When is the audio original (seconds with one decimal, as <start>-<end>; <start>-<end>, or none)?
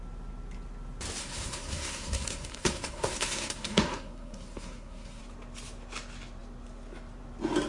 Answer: 0.0-1.2; 5.2-7.7